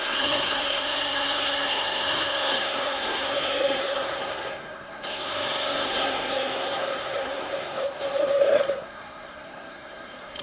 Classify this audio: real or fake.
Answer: fake